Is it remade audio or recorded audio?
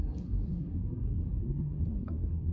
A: remade